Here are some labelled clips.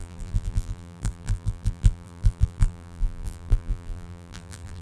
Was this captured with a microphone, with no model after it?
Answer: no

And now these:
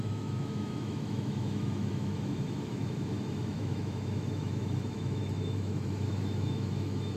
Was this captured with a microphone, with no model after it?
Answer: no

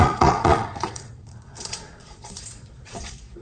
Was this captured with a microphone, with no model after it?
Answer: no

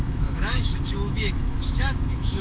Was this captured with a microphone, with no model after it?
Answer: no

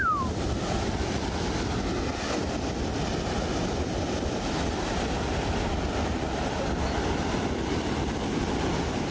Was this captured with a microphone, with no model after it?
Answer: yes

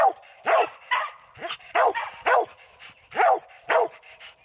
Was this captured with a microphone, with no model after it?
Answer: yes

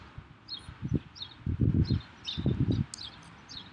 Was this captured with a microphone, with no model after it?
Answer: yes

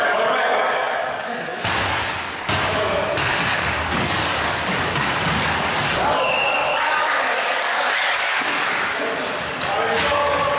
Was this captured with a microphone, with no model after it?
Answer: no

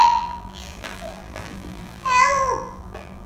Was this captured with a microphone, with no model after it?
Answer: no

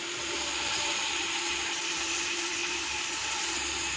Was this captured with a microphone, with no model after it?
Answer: no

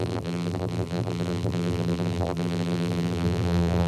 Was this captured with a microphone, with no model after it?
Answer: no